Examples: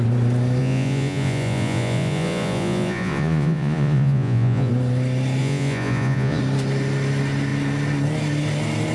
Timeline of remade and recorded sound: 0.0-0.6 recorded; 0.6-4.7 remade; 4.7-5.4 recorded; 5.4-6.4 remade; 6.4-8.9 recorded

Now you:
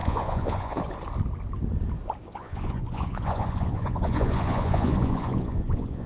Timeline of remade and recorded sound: 0.0-0.9 remade; 0.9-2.3 recorded; 2.3-6.1 remade

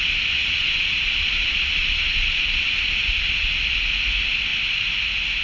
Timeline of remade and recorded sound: 0.0-0.4 recorded; 0.4-3.6 remade; 3.6-5.4 recorded

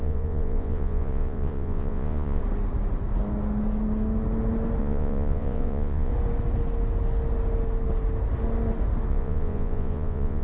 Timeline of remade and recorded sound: 0.0-2.4 remade; 2.4-4.8 recorded; 4.8-6.1 remade; 6.1-9.1 recorded; 9.1-10.4 remade

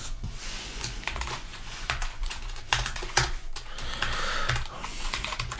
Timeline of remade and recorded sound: 0.0-3.5 remade; 3.5-4.8 recorded; 4.8-5.6 remade

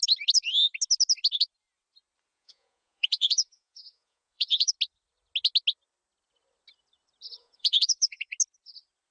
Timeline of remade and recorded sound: 0.0-2.3 recorded; 2.3-4.7 remade; 4.7-7.4 recorded; 7.4-8.3 remade; 8.3-9.1 recorded

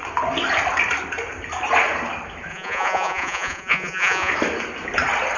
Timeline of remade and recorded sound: 0.0-2.5 recorded; 2.5-4.3 remade; 4.3-5.4 recorded